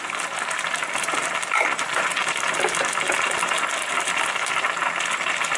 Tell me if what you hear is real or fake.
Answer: real